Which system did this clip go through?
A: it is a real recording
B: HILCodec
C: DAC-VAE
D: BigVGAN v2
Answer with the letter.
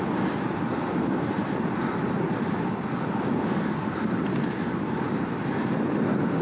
D